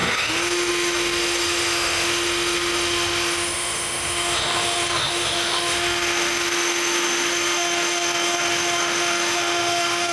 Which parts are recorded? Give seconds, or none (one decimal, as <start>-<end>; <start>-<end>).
none